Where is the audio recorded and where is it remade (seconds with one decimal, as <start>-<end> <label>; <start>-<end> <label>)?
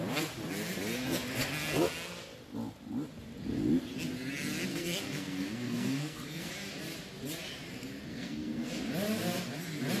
0.0-4.7 recorded; 4.7-6.5 remade; 6.5-8.1 recorded; 8.1-8.7 remade; 8.7-10.0 recorded